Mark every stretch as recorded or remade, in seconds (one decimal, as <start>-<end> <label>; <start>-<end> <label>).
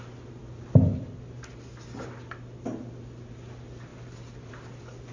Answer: 0.0-5.1 recorded